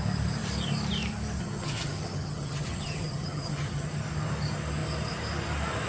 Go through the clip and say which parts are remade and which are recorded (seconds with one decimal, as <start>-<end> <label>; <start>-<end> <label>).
0.0-1.4 recorded; 1.4-3.9 remade; 3.9-5.9 recorded